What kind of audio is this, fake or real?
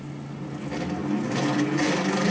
real